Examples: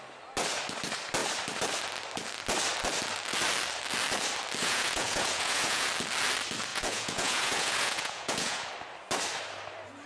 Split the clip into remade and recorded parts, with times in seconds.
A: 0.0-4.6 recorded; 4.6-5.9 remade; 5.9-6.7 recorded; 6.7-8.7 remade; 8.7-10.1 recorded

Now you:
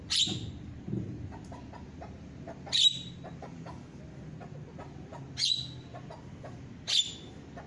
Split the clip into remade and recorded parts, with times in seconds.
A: 0.0-3.4 recorded; 3.4-4.0 remade; 4.0-7.7 recorded

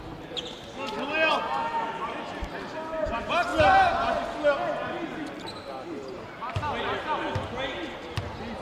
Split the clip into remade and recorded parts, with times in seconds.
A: 0.0-8.6 recorded

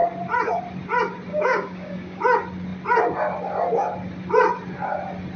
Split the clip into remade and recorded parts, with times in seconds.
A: 0.0-1.3 recorded; 1.3-2.2 remade; 2.2-5.4 recorded